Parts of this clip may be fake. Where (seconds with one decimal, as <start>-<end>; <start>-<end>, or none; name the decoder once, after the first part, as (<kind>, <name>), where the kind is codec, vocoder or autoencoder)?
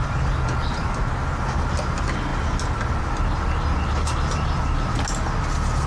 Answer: none